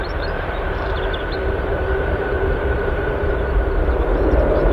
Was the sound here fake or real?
fake